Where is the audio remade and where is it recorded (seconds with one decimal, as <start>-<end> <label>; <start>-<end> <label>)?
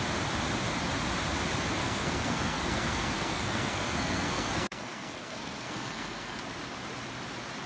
0.0-1.8 recorded; 1.8-6.4 remade; 6.4-7.7 recorded